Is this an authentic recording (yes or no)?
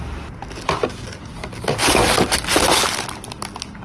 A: yes